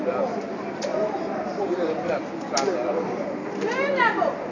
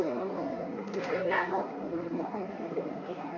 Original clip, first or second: first